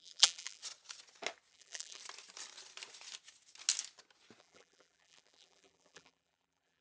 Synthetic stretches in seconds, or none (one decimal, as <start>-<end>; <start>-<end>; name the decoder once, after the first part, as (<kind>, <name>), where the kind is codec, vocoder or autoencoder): 0.0-0.6 (vocoder, BigVGAN v2); 1.5-2.0; 4.4-6.8